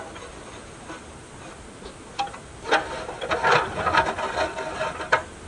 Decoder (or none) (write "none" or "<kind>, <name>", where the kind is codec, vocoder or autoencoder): none